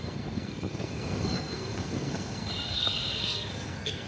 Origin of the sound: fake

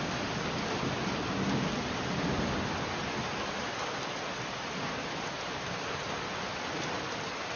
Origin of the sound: real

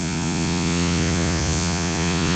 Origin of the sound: fake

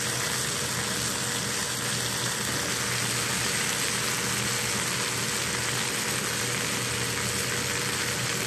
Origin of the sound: real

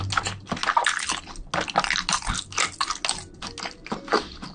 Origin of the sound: real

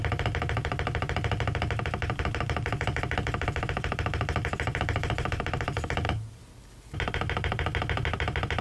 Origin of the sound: real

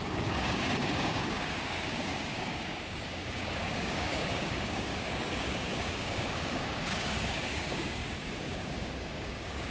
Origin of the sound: fake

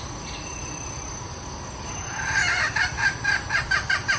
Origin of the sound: real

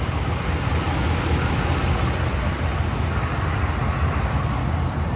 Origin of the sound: real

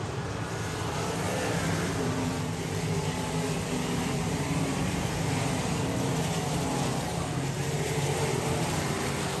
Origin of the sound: fake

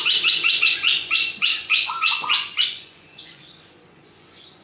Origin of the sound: fake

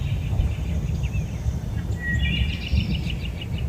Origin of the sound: real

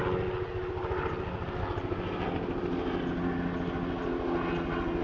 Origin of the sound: real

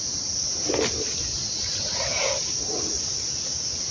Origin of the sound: real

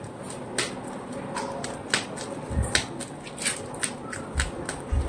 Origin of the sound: real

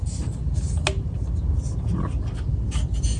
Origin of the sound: real